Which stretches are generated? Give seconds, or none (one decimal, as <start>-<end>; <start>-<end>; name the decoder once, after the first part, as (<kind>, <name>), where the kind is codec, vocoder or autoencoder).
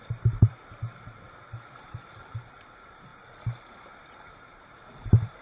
0.0-0.5 (vocoder, BigVGAN v2); 1.7-3.1; 4.0-5.4